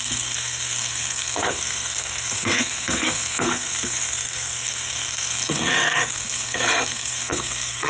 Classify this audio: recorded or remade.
remade